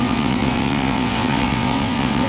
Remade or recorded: remade